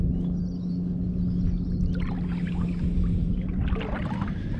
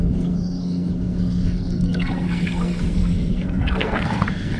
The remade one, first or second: second